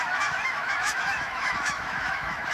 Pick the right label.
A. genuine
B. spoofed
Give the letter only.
B